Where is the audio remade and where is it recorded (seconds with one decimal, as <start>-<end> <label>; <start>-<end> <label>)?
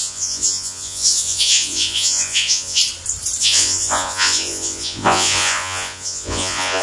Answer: 0.0-2.8 remade; 2.8-3.4 recorded; 3.4-6.8 remade